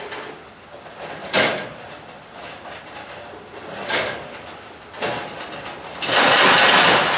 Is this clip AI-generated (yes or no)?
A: no